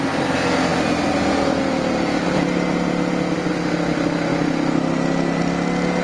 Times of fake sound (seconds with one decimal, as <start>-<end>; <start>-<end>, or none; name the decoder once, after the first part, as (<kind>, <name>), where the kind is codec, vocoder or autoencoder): none